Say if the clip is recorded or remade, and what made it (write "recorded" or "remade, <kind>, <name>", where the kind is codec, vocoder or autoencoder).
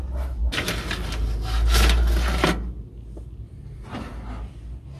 recorded